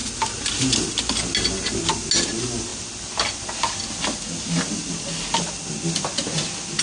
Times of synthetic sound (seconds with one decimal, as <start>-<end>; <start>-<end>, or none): none